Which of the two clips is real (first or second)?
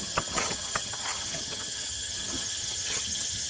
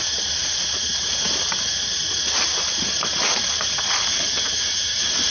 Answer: second